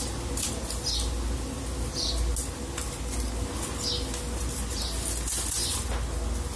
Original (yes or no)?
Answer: yes